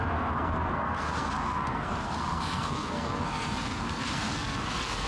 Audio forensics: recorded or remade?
remade